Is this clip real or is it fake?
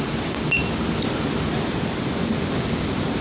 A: fake